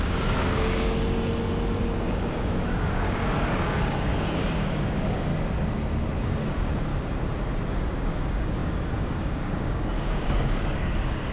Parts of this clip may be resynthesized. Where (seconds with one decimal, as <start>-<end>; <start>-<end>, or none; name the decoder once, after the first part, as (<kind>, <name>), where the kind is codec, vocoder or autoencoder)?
0.0-1.0 (codec, DAC); 1.8-5.3; 6.3-6.9; 7.7-11.3